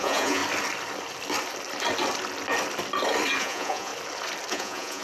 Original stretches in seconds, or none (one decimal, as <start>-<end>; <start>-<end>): 0.4-3.4; 3.9-4.5